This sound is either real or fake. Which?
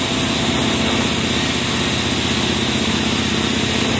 real